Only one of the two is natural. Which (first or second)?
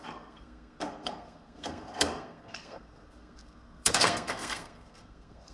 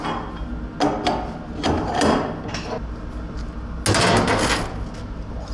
second